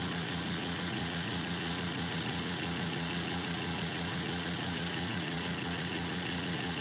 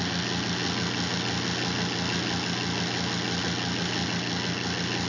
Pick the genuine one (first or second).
second